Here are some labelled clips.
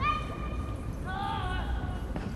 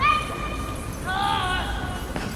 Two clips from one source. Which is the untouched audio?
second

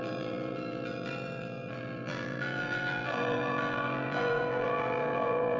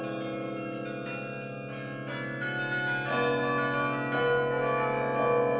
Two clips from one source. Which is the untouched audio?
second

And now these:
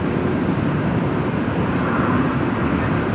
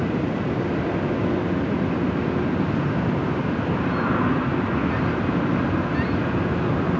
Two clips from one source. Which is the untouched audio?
second